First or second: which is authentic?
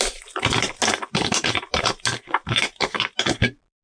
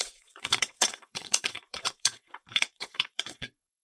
first